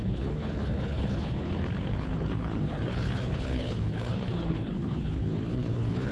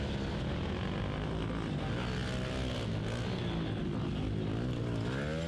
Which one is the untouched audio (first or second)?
second